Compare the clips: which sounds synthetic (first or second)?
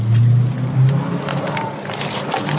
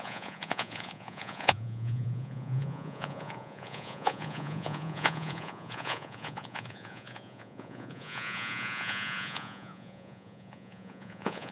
second